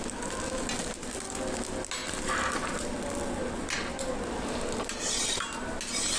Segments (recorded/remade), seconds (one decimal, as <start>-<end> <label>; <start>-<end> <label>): 0.0-6.2 recorded